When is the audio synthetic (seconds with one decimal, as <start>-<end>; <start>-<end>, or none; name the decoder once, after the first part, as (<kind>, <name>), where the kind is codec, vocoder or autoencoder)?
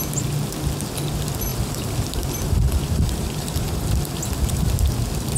1.5-4.7 (vocoder, BigVGAN v2)